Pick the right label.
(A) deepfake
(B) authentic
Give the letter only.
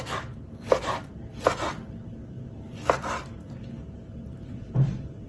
B